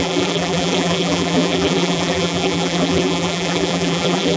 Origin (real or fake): fake